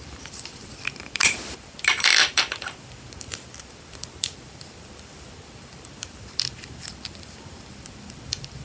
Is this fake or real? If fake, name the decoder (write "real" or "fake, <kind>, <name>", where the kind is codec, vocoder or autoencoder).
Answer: fake, vocoder, BigVGAN v2